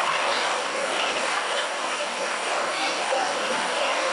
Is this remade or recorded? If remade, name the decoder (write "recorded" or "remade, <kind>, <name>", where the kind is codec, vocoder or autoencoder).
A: remade, codec, DAC